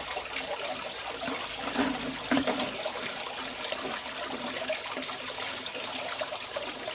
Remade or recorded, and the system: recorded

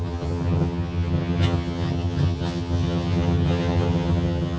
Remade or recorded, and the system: remade, vocoder, HiFi-GAN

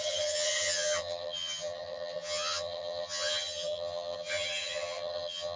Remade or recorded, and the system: remade, vocoder, HiFi-GAN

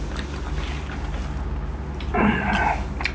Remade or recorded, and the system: recorded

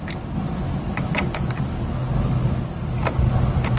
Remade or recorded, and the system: recorded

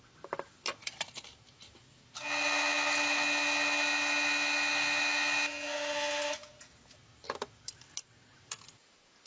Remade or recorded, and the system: recorded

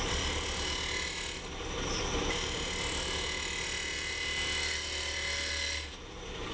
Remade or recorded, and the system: recorded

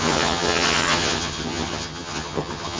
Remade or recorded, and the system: remade, vocoder, HiFi-GAN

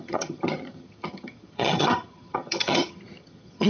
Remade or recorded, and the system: remade, vocoder, HiFi-GAN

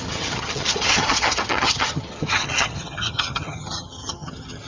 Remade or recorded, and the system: remade, vocoder, HiFi-GAN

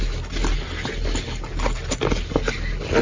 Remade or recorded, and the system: recorded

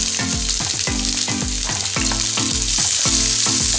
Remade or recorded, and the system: recorded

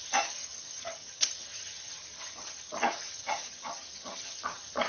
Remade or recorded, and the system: remade, vocoder, HiFi-GAN